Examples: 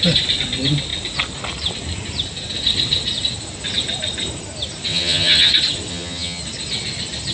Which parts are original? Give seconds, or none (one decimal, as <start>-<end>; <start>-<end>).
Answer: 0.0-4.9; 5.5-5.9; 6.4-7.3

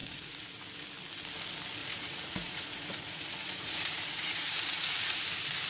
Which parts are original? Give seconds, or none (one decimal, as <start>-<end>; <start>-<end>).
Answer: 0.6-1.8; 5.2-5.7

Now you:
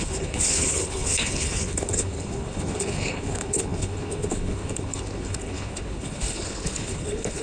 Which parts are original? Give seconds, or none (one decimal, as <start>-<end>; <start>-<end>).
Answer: none

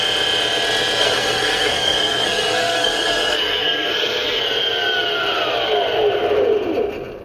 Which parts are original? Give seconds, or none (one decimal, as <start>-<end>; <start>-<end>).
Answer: 0.0-1.0; 4.4-7.2

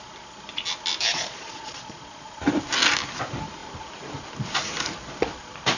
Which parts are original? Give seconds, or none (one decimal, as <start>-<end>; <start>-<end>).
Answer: 0.0-1.1; 2.4-5.8

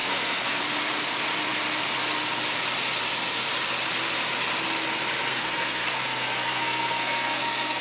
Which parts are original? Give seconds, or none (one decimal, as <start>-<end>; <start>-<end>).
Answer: 0.6-5.3